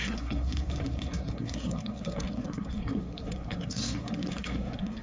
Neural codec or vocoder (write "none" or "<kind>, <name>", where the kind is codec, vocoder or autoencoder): codec, SNAC